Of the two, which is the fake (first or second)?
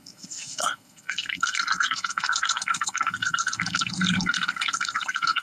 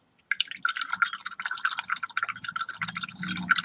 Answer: first